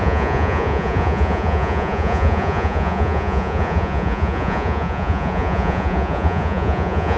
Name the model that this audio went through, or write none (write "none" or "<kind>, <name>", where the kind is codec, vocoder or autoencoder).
vocoder, Vocos